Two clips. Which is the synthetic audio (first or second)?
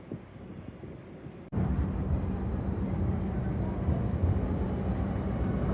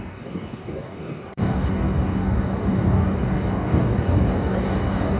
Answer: second